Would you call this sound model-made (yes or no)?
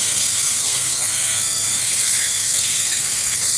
yes